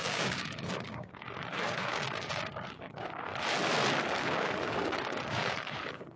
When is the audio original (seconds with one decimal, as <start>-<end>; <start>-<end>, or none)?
3.3-4.2